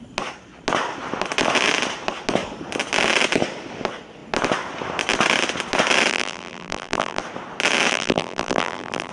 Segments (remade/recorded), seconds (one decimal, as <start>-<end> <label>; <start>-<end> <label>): 0.0-6.1 recorded; 6.1-7.2 remade; 7.2-7.9 recorded; 7.9-9.1 remade